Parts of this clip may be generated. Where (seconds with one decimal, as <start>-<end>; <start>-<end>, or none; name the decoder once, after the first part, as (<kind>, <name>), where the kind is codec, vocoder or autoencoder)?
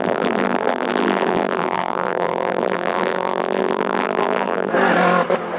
0.0-4.7 (vocoder, BigVGAN v2)